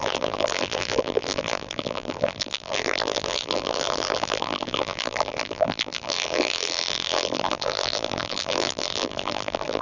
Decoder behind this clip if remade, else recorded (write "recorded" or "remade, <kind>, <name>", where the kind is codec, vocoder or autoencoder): remade, vocoder, BigVGAN v2